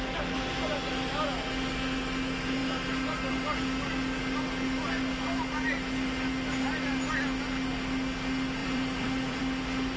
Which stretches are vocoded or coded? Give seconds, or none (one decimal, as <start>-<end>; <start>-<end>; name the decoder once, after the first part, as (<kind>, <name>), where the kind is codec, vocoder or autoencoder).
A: 8.6-9.4 (vocoder, BigVGAN v2)